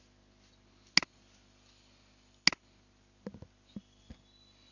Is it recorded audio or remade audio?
recorded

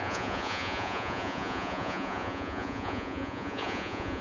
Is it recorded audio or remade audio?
remade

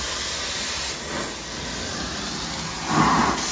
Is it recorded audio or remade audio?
recorded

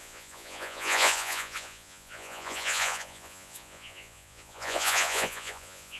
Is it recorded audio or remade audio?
remade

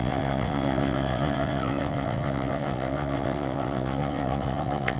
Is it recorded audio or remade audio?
remade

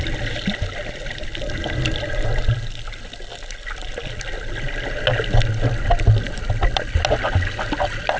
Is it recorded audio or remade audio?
recorded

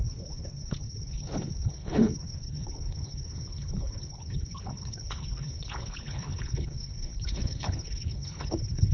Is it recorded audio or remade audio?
remade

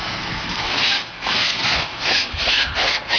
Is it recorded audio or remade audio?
remade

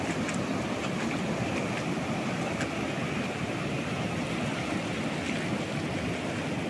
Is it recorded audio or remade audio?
recorded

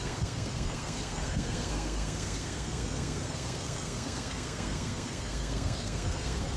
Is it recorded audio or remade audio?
remade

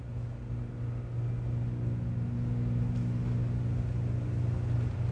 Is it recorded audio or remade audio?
recorded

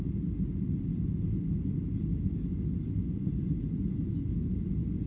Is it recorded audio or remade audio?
recorded